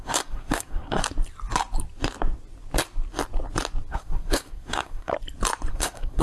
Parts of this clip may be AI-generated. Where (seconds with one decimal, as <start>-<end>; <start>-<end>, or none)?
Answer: 0.0-1.0; 3.9-5.1; 5.7-6.2